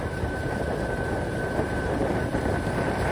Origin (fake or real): fake